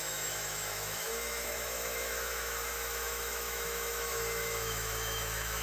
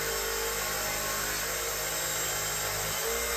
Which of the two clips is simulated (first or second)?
first